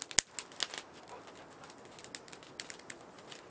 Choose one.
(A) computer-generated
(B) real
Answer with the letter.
B